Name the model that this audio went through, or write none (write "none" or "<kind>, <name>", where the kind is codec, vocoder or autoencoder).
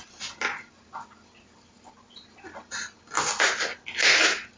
none